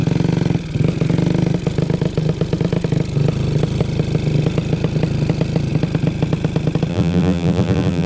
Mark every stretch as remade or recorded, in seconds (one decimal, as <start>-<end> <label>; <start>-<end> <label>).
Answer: 0.0-6.9 recorded; 6.9-8.1 remade

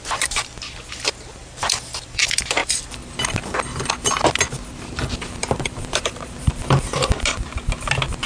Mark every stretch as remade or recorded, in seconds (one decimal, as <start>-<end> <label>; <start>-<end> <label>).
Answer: 0.0-1.4 recorded; 1.4-2.2 remade; 2.2-2.6 recorded; 2.6-3.2 remade; 3.2-5.4 recorded; 5.4-7.1 remade; 7.1-8.3 recorded

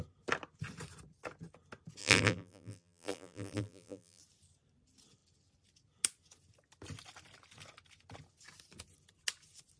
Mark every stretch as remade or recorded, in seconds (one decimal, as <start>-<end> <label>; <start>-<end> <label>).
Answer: 0.0-2.0 recorded; 2.0-4.2 remade; 4.2-9.8 recorded

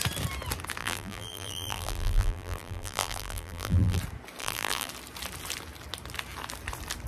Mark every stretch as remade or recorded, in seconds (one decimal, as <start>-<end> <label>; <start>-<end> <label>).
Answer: 0.0-0.8 recorded; 0.8-4.0 remade; 4.0-4.4 recorded; 4.4-4.9 remade; 4.9-7.1 recorded

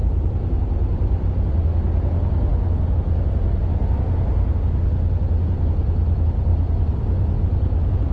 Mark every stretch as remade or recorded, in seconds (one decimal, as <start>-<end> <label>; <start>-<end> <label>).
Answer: 0.0-6.5 recorded; 6.5-7.4 remade; 7.4-8.1 recorded

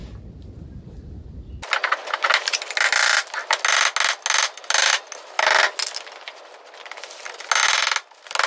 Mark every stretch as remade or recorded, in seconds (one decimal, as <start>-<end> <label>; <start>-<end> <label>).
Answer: 0.0-8.5 recorded

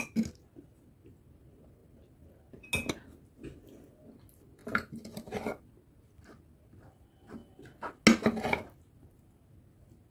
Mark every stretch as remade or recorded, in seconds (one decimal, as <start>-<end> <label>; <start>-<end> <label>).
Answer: 0.0-4.6 recorded; 4.6-5.6 remade; 5.6-10.1 recorded

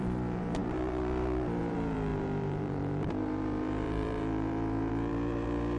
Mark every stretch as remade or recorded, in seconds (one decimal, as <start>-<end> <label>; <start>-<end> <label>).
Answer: 0.0-5.8 remade